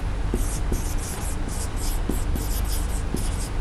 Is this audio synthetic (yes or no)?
no